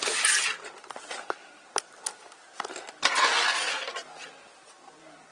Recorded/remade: recorded